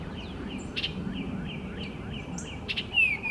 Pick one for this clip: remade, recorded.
recorded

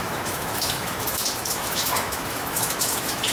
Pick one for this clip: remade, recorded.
remade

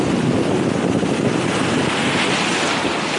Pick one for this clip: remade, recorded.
recorded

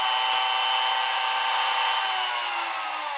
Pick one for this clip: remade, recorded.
recorded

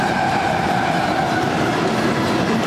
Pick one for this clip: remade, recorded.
recorded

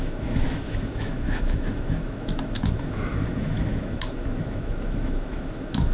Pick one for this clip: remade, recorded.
remade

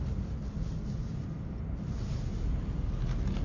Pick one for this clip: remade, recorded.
recorded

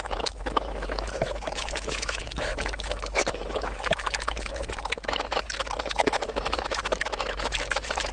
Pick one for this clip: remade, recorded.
remade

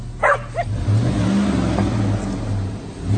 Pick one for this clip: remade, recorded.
recorded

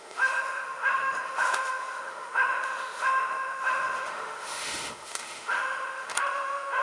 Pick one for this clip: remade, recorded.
remade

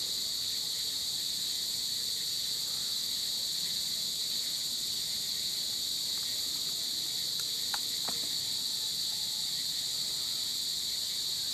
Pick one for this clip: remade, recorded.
recorded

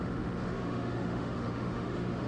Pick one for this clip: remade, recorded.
remade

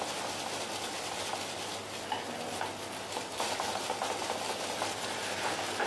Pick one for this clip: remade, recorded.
recorded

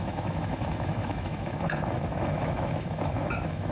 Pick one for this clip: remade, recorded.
remade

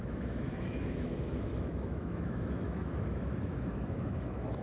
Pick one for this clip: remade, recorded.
remade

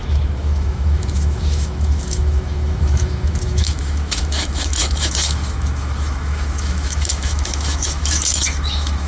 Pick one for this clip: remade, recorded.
remade